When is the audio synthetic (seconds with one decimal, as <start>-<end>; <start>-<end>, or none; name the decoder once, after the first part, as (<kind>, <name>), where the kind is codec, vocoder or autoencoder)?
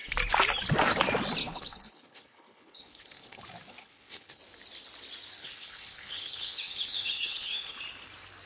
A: 1.4-3.4 (codec, HILCodec); 3.8-4.4; 5.4-7.8